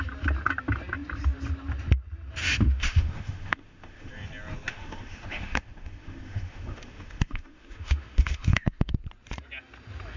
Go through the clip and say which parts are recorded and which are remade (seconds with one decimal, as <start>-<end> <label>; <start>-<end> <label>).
0.0-2.4 recorded; 2.4-4.1 remade; 4.1-4.7 recorded; 4.7-8.9 remade; 8.9-10.2 recorded